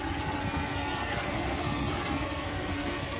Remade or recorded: remade